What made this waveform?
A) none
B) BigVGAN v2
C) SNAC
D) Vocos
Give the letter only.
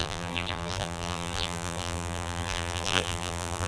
B